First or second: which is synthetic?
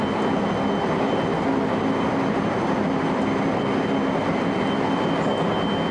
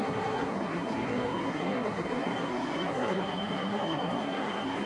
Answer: second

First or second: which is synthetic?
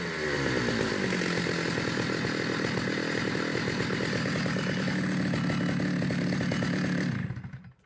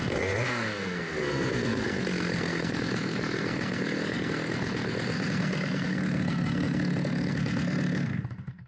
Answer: second